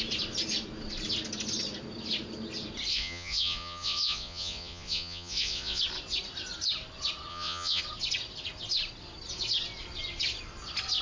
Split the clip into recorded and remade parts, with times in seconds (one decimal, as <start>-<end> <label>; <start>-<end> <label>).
0.0-2.9 recorded; 2.9-5.8 remade; 5.8-7.3 recorded; 7.3-7.8 remade; 7.8-11.0 recorded